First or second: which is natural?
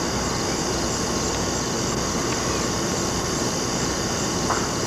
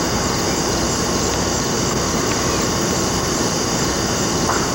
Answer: first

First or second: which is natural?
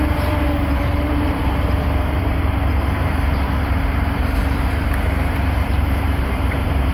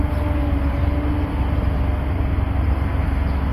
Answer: second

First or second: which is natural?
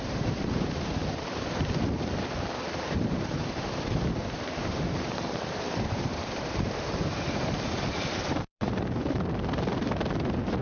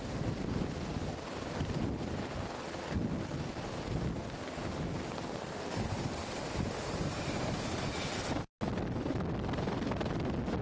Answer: second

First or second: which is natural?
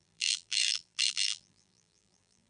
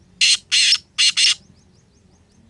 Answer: second